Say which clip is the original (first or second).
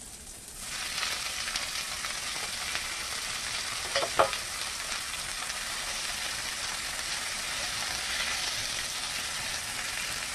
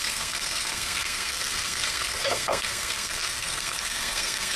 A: first